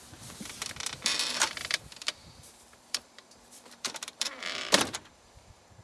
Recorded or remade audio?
remade